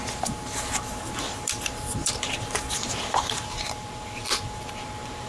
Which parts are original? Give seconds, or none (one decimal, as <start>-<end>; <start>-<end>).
none